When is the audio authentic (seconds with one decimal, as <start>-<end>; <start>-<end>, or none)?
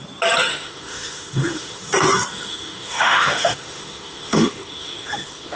0.0-0.5; 1.9-2.3